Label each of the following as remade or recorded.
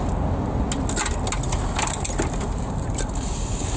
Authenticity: recorded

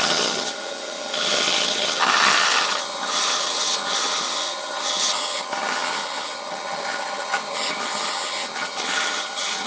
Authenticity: remade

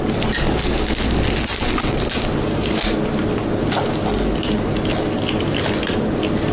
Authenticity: recorded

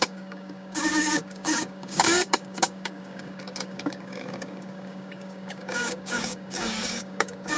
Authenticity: remade